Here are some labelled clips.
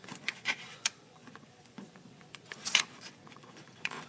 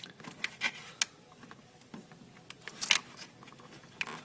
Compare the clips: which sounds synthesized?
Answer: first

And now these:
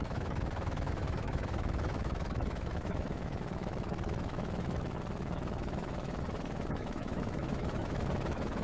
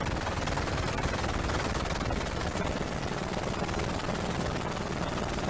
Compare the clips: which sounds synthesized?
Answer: first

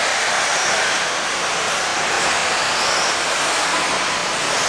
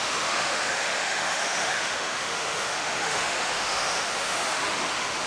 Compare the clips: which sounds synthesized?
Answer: second